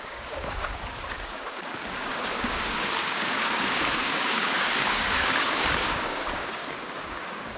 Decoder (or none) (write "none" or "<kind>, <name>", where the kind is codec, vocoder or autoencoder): codec, DAC